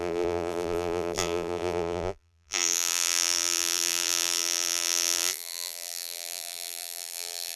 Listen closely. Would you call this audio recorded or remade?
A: remade